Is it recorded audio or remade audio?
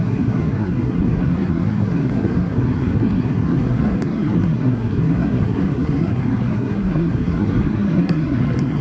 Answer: remade